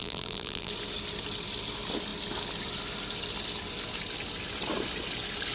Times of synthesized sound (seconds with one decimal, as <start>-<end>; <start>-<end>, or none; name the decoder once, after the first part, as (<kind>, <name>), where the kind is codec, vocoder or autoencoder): 0.0-0.7 (vocoder, BigVGAN v2)